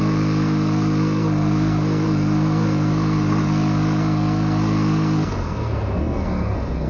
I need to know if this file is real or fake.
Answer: fake